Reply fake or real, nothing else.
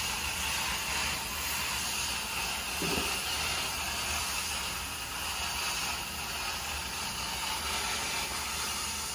real